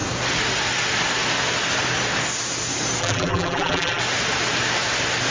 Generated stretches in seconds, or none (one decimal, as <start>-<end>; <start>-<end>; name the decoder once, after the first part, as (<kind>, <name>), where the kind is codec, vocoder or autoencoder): 3.0-4.0 (vocoder, BigVGAN v2)